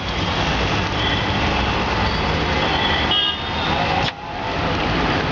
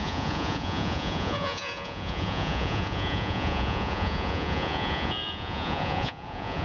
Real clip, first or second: first